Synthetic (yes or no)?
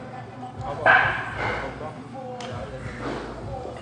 no